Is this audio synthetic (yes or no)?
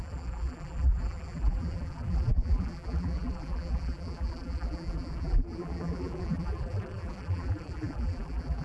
yes